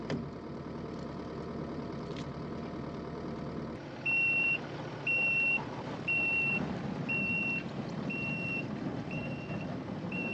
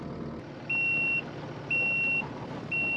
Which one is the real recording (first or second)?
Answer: second